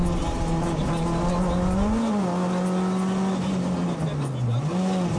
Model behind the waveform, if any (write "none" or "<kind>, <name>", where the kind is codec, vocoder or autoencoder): none